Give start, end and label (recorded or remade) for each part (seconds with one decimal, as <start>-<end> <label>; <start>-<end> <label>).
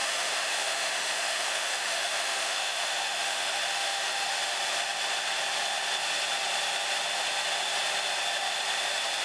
0.0-4.3 remade; 4.3-9.2 recorded